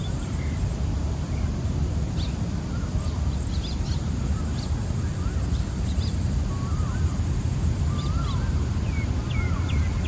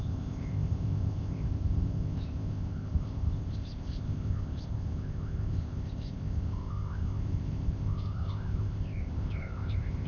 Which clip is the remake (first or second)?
second